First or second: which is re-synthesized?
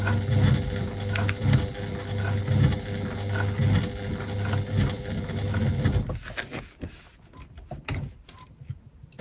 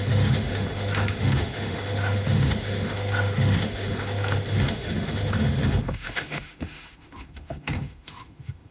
second